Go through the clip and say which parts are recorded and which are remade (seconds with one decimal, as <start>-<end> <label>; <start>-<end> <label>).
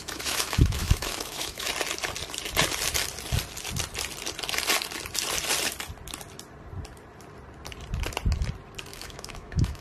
0.0-1.7 remade; 1.7-8.9 recorded; 8.9-9.8 remade